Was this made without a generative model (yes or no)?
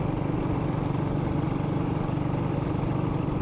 yes